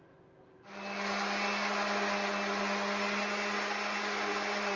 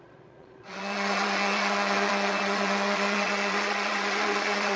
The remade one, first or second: second